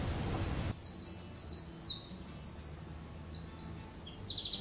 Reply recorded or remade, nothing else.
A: recorded